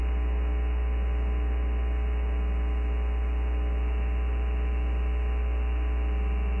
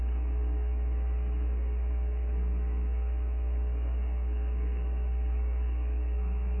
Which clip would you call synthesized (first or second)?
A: second